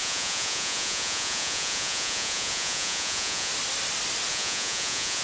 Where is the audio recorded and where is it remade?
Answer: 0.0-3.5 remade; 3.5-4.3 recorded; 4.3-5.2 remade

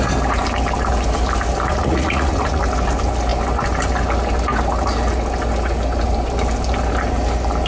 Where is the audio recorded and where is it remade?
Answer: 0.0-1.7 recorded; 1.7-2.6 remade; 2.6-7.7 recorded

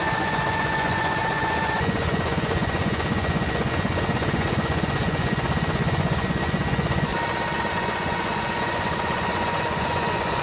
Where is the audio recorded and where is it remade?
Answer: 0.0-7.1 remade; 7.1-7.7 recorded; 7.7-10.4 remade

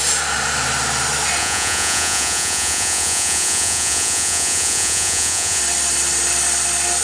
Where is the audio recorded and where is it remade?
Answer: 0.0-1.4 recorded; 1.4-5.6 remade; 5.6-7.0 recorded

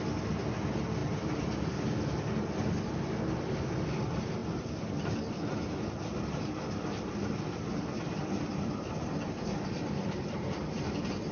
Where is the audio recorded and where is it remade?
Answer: 0.0-11.3 recorded

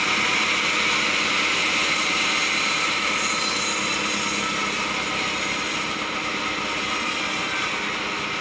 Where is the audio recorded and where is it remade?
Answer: 0.0-8.4 recorded